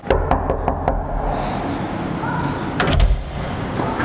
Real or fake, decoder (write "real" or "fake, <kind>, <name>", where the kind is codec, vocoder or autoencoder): real